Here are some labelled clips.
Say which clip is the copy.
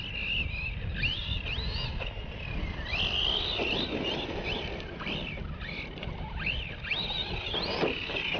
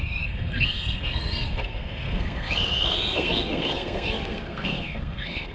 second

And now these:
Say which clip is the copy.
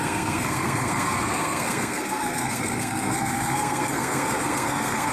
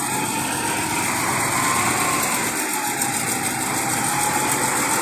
first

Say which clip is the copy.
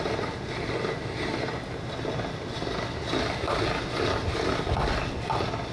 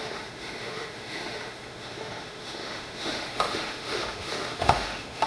second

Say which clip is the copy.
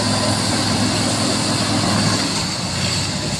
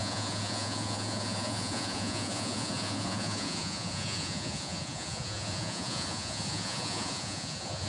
second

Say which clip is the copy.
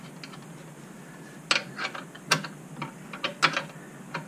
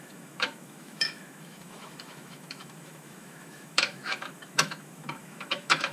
second